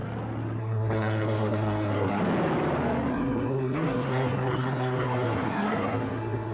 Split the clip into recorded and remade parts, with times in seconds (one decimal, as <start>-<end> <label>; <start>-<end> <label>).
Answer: 0.0-0.6 recorded; 0.6-2.2 remade; 2.2-3.1 recorded; 3.1-6.5 remade